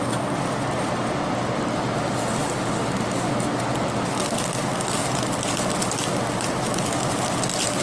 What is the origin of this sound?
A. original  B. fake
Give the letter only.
A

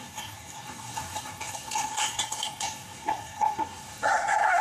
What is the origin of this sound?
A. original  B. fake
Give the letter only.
B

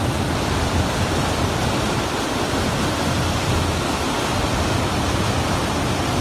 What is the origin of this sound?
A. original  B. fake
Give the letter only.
A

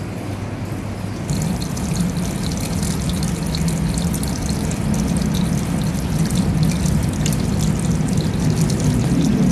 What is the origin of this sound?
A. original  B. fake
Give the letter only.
A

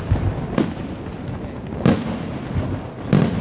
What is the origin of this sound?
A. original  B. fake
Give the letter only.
A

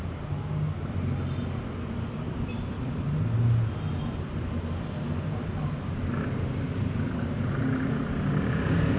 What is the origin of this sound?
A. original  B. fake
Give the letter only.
A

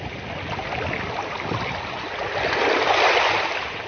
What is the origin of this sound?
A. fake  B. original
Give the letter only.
B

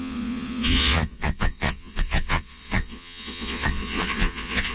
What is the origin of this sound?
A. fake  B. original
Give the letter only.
A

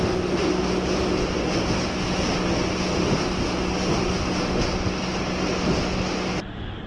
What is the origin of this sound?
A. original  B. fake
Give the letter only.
A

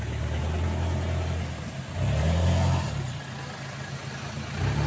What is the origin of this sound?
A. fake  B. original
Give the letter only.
B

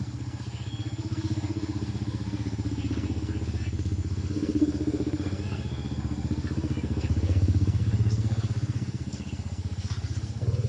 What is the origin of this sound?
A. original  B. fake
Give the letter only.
B